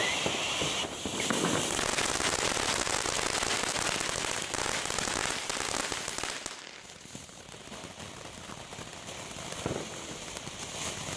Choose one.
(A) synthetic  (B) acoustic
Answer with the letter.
B